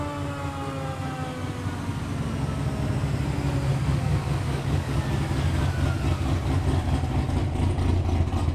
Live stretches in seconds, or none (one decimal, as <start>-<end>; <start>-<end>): 0.0-3.7; 5.0-8.5